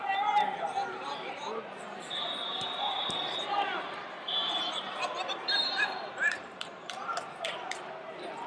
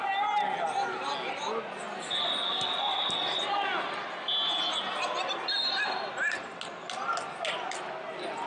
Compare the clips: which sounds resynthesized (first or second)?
first